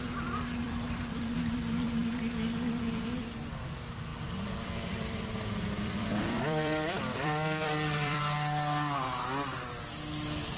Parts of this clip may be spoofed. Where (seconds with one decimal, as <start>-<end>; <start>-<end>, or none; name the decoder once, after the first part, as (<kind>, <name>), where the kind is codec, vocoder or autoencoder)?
0.6-1.3 (vocoder, BigVGAN v2); 4.1-8.2